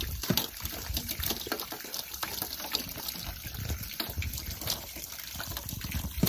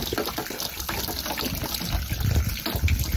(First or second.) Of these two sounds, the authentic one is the second